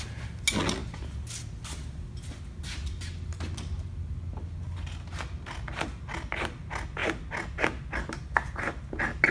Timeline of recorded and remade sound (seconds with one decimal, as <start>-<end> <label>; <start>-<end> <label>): 0.0-9.3 recorded